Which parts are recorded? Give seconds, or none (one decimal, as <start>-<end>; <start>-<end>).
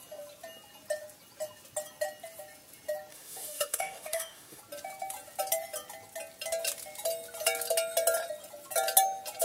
0.0-3.1; 4.6-9.4